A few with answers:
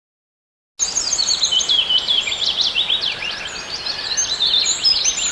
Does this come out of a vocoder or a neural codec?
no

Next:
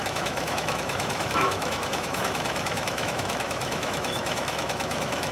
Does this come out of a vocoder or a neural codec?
yes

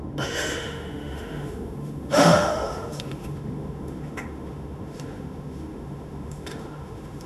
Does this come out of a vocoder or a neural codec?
yes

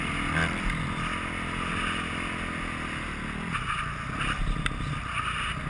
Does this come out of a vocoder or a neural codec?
no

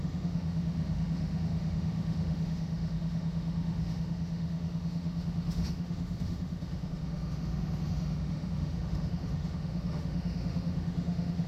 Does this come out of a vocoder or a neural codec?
yes